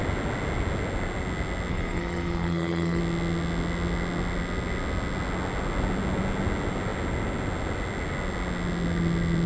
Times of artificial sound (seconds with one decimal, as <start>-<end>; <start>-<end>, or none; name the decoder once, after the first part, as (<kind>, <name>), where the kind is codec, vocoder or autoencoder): 1.7-3.0 (codec, SNAC)